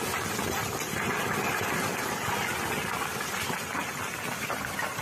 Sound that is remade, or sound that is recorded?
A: recorded